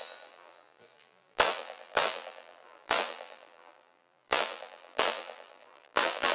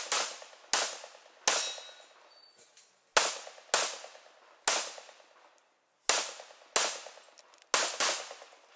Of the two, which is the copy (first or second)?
first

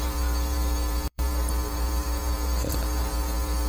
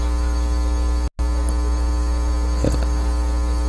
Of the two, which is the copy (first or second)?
first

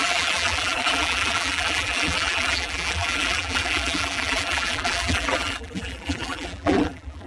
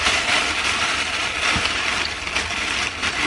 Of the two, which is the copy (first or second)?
first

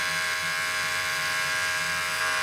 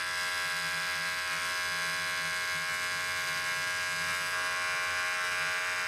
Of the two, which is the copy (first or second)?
first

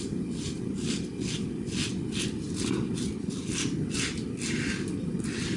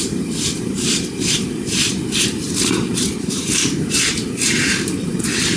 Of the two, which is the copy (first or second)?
second